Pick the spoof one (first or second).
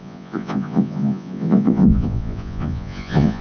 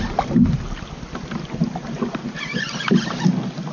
first